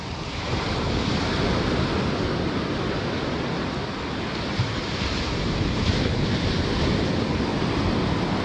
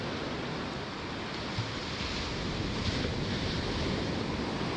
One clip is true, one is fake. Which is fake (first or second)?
first